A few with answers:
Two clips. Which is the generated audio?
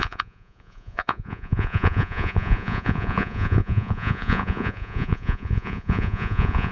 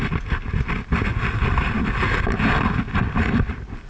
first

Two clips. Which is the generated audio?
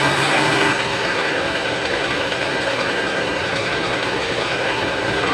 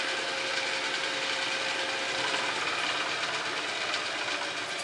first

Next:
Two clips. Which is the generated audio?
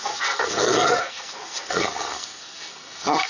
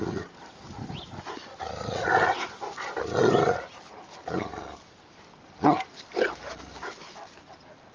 first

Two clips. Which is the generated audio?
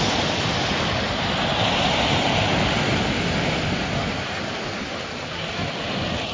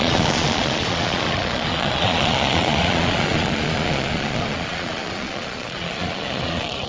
second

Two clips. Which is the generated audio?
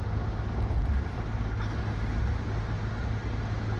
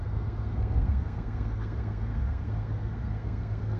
second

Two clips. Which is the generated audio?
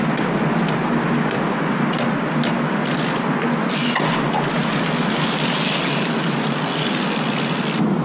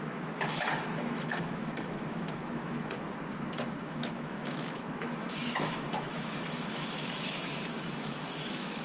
second